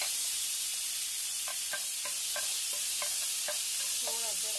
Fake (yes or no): no